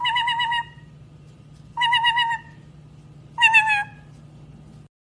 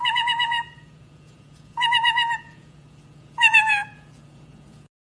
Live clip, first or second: first